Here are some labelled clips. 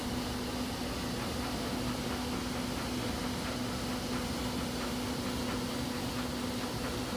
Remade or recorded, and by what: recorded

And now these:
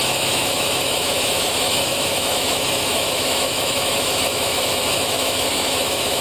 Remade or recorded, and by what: remade, autoencoder, DAC-VAE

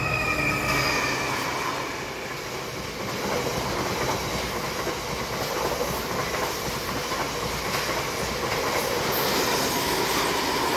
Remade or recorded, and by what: recorded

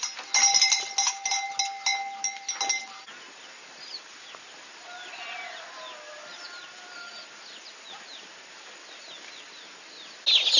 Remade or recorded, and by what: recorded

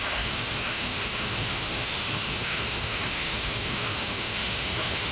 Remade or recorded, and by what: remade, autoencoder, DAC-VAE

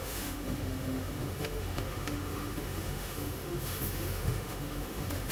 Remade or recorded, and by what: remade, autoencoder, DAC-VAE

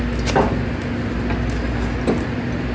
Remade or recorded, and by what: recorded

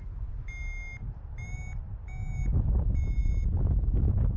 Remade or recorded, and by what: recorded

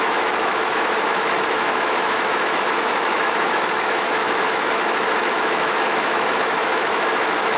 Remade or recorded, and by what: remade, autoencoder, DAC-VAE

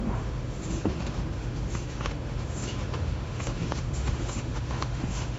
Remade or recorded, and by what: remade, autoencoder, DAC-VAE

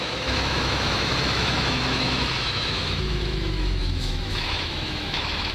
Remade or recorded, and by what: remade, autoencoder, DAC-VAE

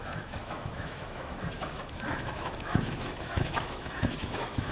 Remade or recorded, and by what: remade, autoencoder, DAC-VAE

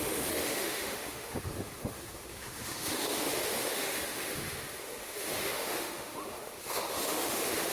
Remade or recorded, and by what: remade, autoencoder, DAC-VAE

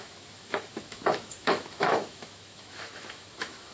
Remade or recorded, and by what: remade, autoencoder, DAC-VAE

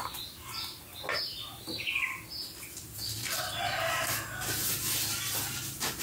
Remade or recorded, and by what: recorded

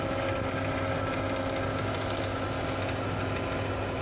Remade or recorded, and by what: recorded